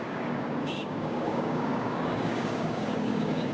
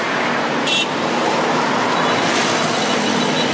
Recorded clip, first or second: second